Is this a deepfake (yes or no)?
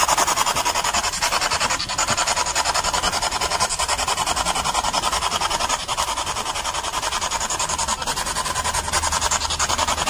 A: no